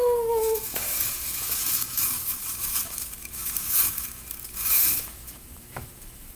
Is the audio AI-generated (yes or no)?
yes